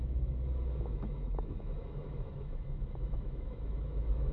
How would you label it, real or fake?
fake